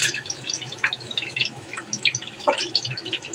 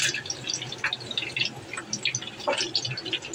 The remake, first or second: first